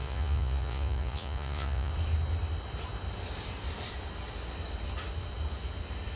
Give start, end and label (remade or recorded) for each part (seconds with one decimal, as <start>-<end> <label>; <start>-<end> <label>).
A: 0.0-1.9 remade; 1.9-6.2 recorded